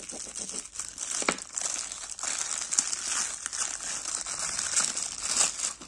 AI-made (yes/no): no